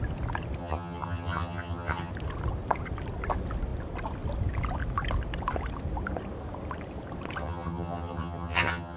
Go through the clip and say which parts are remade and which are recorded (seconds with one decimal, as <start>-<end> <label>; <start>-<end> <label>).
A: 0.0-0.6 recorded; 0.6-2.1 remade; 2.1-7.4 recorded; 7.4-9.0 remade